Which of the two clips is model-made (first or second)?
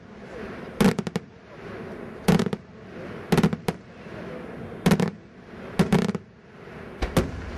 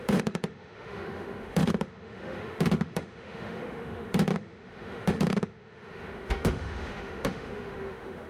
second